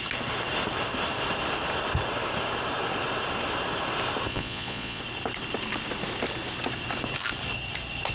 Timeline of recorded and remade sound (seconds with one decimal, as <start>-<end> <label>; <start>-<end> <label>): 0.0-4.3 recorded; 4.3-5.0 remade; 5.0-8.1 recorded